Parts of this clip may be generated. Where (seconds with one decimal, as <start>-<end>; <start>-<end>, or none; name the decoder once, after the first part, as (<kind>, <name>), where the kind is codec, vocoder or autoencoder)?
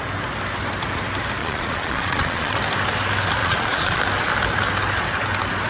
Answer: 1.4-2.6 (vocoder, Vocos); 3.4-4.0